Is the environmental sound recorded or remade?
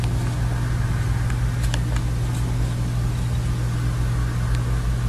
recorded